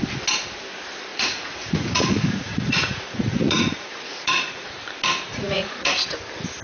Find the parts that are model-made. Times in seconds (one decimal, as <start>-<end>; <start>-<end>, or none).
1.1-4.8; 5.3-5.9